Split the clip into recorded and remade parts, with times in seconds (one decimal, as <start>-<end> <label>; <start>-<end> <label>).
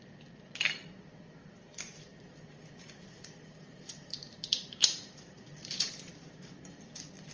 0.0-2.1 recorded; 2.1-6.5 remade; 6.5-7.3 recorded